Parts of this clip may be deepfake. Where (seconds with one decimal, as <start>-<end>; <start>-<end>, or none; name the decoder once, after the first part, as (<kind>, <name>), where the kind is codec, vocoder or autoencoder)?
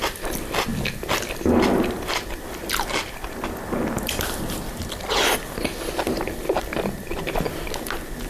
none